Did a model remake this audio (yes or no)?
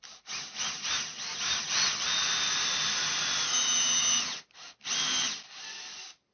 no